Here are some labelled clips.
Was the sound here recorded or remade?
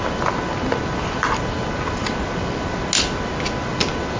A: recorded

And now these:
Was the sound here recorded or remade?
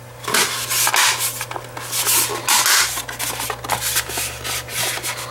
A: recorded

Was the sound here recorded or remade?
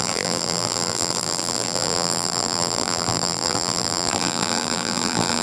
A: remade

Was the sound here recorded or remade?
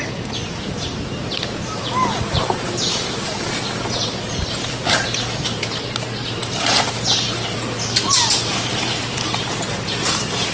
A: recorded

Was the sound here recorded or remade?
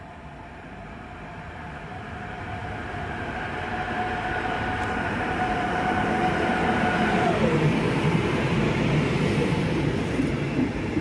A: remade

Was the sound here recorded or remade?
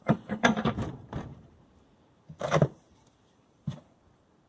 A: remade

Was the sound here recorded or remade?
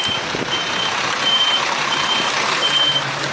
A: remade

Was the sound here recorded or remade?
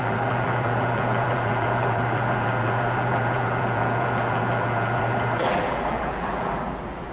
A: remade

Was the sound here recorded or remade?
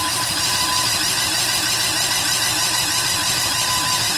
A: remade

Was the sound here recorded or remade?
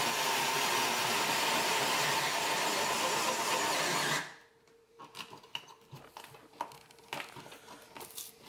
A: recorded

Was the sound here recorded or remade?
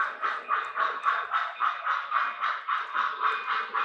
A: recorded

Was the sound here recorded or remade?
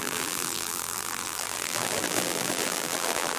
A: remade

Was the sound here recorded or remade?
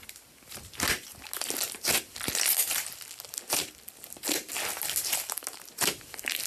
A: recorded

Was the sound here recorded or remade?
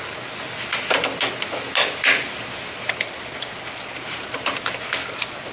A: recorded